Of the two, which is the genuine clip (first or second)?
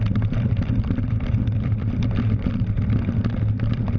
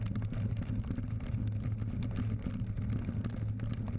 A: second